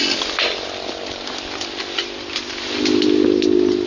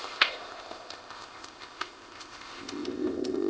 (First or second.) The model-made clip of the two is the second